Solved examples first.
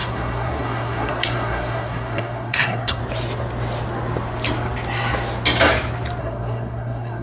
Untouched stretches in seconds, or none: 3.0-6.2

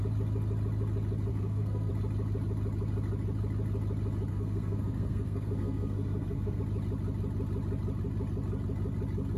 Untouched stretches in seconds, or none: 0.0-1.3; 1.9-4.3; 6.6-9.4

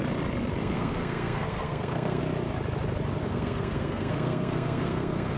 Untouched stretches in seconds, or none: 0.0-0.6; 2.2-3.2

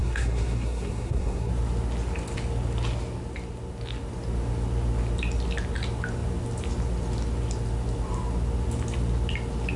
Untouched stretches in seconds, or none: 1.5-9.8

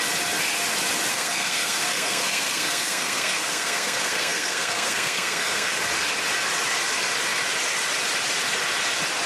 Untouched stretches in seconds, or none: 0.0-1.1; 5.8-9.3